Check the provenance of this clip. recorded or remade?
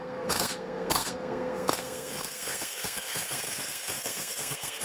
remade